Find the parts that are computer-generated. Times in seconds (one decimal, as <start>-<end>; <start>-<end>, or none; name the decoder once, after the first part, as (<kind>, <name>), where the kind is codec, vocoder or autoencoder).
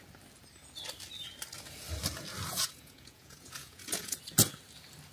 2.5-4.2 (vocoder, Vocos)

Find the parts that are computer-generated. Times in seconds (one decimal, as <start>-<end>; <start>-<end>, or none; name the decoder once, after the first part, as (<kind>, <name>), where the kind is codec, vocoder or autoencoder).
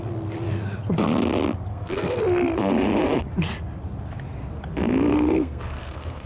1.7-2.2 (codec, SNAC); 5.1-6.3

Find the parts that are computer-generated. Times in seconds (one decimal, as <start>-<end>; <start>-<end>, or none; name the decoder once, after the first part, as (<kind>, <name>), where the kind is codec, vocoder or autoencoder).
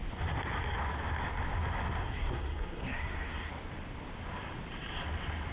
2.0-3.5 (codec, SNAC)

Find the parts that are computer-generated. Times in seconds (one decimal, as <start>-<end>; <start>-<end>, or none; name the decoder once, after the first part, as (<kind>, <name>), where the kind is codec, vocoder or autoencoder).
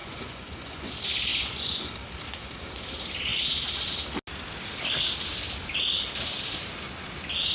0.0-0.9 (vocoder, Vocos); 1.3-1.9